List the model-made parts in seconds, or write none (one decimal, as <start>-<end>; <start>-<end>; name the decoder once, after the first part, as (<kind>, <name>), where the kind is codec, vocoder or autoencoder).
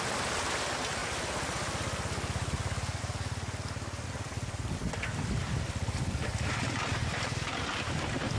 7.0-7.9 (vocoder, BigVGAN v2)